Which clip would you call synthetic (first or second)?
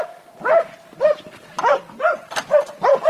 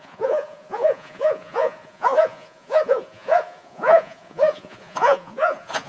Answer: second